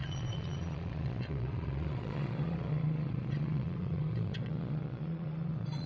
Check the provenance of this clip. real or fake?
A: fake